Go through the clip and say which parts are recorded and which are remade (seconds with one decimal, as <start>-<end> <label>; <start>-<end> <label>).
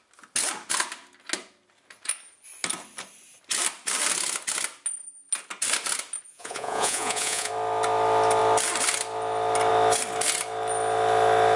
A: 0.0-6.3 recorded; 6.3-7.5 remade; 7.5-11.6 recorded